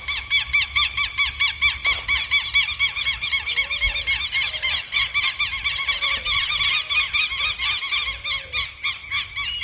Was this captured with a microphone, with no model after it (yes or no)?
yes